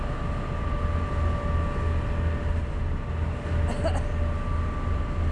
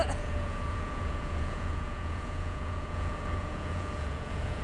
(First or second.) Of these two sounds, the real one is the first